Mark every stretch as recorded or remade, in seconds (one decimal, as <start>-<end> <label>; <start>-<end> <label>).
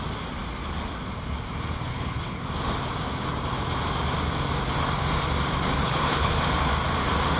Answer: 0.0-1.9 recorded; 1.9-2.4 remade; 2.4-5.8 recorded; 5.8-6.3 remade; 6.3-7.4 recorded